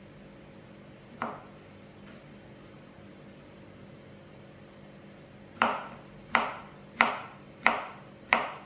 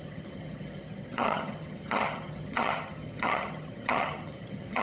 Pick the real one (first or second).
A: first